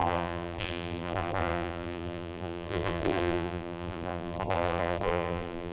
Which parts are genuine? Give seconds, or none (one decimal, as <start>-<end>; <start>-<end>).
none